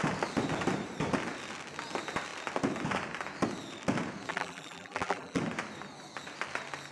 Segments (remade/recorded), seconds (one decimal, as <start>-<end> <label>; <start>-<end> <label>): 0.0-4.3 recorded; 4.3-5.4 remade; 5.4-6.9 recorded